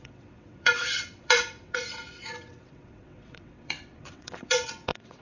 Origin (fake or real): fake